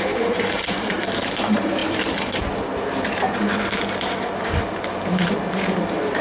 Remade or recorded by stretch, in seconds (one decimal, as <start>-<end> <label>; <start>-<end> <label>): 0.0-6.2 remade